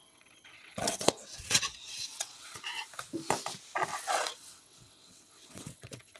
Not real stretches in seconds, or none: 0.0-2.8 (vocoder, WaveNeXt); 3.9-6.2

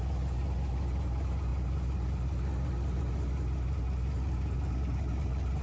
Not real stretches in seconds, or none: none

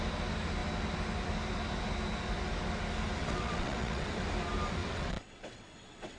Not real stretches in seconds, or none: 3.2-4.1 (vocoder, WaveNeXt); 4.8-6.2